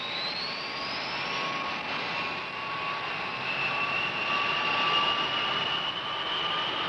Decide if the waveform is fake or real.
real